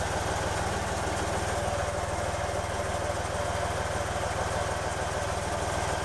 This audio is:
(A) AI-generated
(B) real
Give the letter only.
B